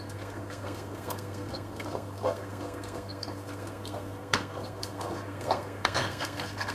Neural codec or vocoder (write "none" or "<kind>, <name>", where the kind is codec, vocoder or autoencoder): codec, SNAC